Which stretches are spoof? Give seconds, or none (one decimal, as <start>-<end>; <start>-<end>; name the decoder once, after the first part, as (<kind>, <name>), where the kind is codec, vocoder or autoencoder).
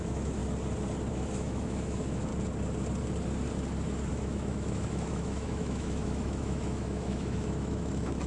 0.0-0.4 (autoencoder, DAC-VAE); 1.1-2.3; 4.1-8.3